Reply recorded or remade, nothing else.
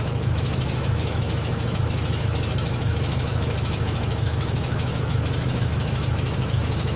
remade